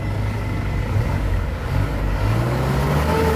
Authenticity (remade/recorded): remade